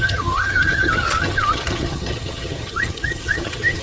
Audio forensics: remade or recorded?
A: remade